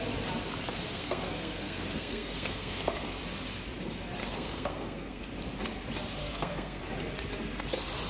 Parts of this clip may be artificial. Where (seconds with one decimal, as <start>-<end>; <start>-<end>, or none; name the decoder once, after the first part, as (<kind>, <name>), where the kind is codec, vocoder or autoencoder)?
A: 0.6-3.2 (codec, SNAC); 4.2-5.2; 6.2-6.8